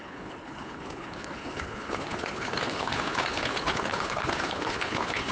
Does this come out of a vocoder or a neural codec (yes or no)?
yes